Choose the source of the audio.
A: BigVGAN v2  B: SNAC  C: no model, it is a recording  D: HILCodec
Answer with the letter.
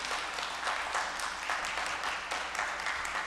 C